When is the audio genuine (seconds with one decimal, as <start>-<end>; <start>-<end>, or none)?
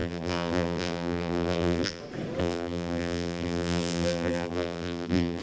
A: 2.0-2.4